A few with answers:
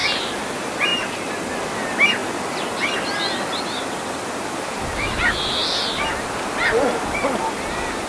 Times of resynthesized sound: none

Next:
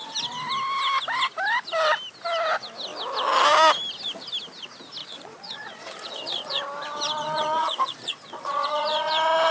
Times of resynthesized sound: 5.0-6.6 (vocoder, Vocos); 7.2-9.1

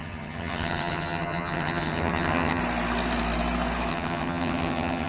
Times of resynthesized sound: 0.0-2.6 (vocoder, HiFi-GAN); 3.9-5.1

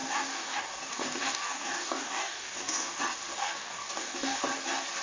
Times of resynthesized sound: 0.0-3.0 (codec, DAC); 3.4-4.4

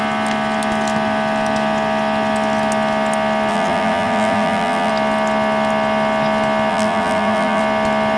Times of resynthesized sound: 3.5-4.9 (vocoder, BigVGAN v2); 6.7-7.6

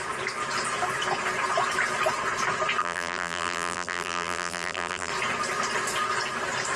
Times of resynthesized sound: 2.8-5.1 (vocoder, BigVGAN v2)